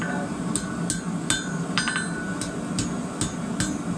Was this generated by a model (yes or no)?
no